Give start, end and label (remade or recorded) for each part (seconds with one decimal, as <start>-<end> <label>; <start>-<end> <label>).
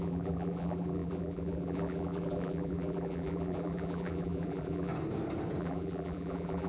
0.0-4.9 remade; 4.9-5.6 recorded; 5.6-6.7 remade